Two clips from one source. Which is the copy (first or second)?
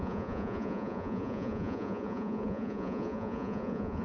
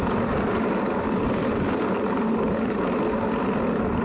first